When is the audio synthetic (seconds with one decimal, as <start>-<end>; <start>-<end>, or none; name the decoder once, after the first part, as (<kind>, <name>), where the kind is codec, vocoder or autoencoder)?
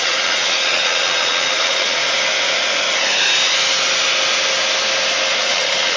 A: 0.0-2.0 (vocoder, Vocos); 5.4-6.0